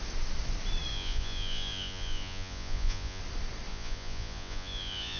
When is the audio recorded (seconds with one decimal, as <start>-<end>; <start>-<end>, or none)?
0.0-0.9; 3.2-3.7